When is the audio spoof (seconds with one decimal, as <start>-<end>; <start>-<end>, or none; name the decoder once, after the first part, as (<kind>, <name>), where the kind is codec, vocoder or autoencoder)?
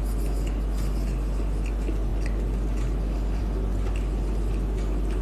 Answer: none